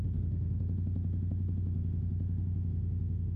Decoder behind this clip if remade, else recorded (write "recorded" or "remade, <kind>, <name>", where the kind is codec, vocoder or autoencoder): remade, autoencoder, DAC-VAE